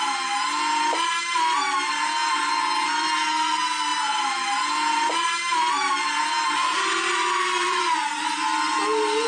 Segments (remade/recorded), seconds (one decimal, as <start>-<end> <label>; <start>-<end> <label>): 0.0-2.2 recorded; 2.2-3.3 remade; 3.3-3.9 recorded; 3.9-7.8 remade; 7.8-9.3 recorded

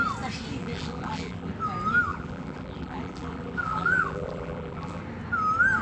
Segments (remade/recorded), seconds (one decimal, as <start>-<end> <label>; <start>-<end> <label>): 0.0-0.6 recorded; 0.6-1.5 remade; 1.5-2.1 recorded; 2.1-5.0 remade; 5.0-5.8 recorded

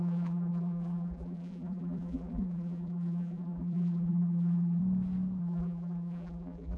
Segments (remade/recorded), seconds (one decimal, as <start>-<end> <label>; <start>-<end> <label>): 0.0-4.8 remade; 4.8-5.4 recorded; 5.4-6.8 remade

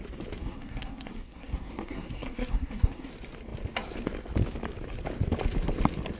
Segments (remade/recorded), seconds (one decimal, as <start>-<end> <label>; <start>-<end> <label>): 0.0-0.4 recorded; 0.4-3.1 remade; 3.1-6.2 recorded